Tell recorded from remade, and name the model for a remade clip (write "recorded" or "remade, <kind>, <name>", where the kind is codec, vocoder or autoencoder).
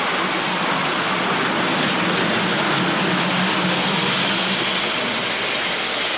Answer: recorded